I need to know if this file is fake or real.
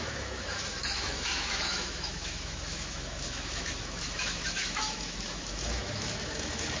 fake